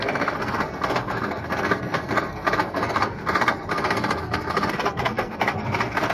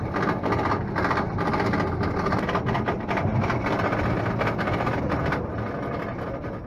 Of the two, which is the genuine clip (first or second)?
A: second